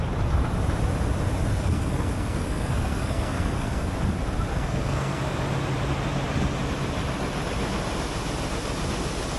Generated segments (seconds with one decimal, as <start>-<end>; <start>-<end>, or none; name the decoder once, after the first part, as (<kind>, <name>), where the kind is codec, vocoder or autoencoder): 1.5-3.9 (codec, SNAC); 4.5-5.2

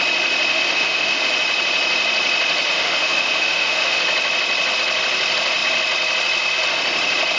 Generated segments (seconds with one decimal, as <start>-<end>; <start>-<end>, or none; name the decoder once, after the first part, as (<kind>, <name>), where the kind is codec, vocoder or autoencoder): 0.5-1.2 (autoencoder, DAC-VAE); 2.7-4.0

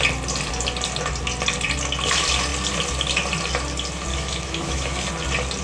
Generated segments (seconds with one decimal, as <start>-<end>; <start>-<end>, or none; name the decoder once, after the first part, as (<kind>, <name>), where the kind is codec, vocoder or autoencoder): 4.1-5.1 (autoencoder, DAC-VAE)

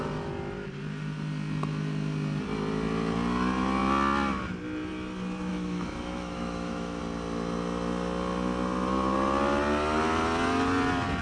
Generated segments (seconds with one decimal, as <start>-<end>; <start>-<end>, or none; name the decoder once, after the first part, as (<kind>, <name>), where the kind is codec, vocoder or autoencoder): 5.5-7.0 (autoencoder, DAC-VAE)